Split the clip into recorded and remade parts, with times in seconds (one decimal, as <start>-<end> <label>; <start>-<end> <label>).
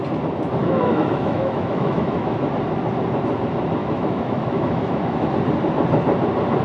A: 0.0-0.6 recorded; 0.6-2.5 remade; 2.5-3.8 recorded; 3.8-5.3 remade; 5.3-6.6 recorded